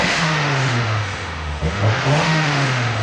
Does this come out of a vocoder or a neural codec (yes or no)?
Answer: yes